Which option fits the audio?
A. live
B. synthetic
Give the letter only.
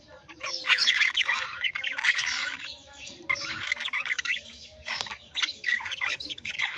B